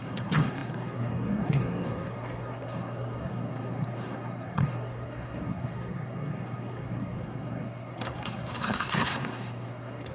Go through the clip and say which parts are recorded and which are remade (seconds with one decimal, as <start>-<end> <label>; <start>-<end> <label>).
0.0-10.1 remade